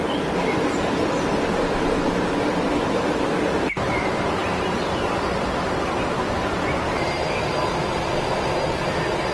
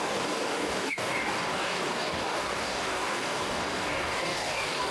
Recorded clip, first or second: first